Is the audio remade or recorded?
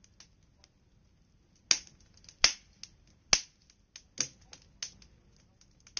recorded